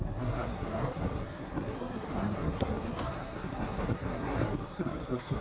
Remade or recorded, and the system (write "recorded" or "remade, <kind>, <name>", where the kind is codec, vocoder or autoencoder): remade, codec, SNAC